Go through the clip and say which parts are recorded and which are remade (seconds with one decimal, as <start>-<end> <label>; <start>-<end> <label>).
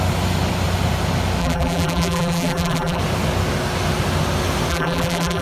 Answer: 0.0-1.4 recorded; 1.4-3.0 remade; 3.0-4.7 recorded; 4.7-5.4 remade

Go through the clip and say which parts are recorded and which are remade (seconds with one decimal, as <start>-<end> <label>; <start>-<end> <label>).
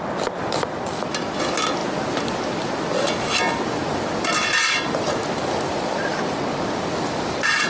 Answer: 0.0-7.7 recorded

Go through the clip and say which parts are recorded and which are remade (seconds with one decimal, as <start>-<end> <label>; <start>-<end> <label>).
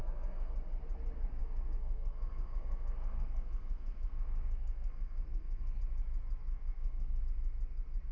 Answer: 0.0-0.5 remade; 0.5-1.4 recorded; 1.4-5.8 remade; 5.8-6.5 recorded; 6.5-7.2 remade; 7.2-8.1 recorded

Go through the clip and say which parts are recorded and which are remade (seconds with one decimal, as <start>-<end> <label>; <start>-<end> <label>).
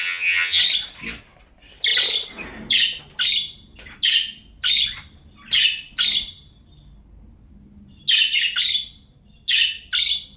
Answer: 0.0-0.6 remade; 0.6-10.4 recorded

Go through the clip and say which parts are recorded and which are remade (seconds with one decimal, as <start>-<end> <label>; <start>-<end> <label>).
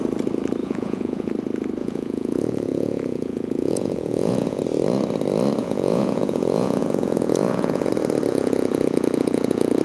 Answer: 0.0-0.6 recorded; 0.6-1.3 remade; 1.3-1.8 recorded; 1.8-4.6 remade; 4.6-5.6 recorded; 5.6-7.9 remade; 7.9-8.3 recorded; 8.3-9.8 remade